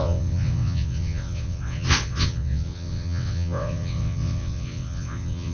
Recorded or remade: remade